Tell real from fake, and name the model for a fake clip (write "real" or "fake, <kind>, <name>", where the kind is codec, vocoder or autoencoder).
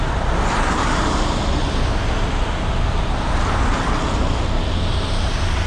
real